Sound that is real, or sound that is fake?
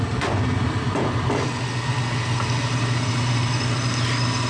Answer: real